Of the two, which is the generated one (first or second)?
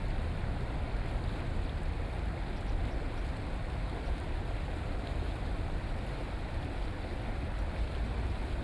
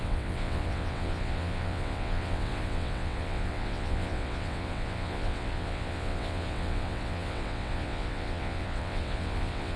second